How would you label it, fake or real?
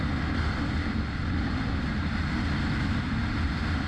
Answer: real